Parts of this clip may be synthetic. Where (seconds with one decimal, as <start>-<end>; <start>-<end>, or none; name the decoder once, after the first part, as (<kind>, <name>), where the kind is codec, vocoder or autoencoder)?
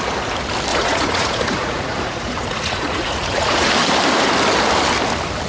0.7-3.7 (vocoder, Vocos)